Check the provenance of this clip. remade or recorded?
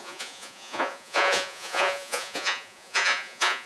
remade